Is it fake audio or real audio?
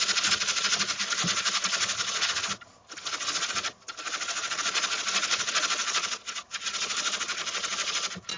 real